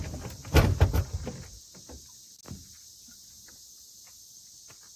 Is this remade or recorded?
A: recorded